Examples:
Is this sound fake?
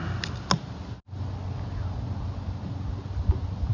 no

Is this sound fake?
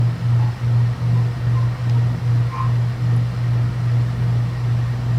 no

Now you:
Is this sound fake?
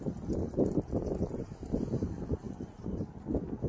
no